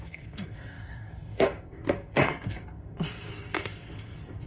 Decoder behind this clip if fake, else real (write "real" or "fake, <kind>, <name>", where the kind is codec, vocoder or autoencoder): fake, codec, SNAC